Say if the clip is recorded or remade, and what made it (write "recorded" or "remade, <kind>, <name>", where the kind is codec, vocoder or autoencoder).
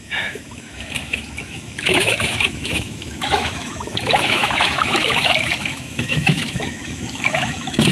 remade, autoencoder, DAC-VAE